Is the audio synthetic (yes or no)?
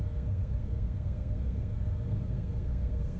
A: yes